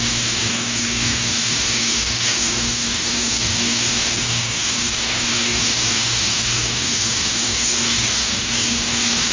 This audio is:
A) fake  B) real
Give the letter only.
A